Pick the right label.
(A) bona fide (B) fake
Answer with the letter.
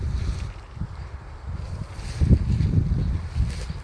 A